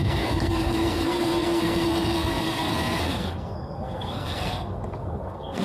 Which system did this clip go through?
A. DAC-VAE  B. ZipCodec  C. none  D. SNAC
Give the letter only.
D